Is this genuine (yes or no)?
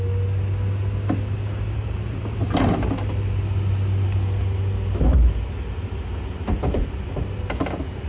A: yes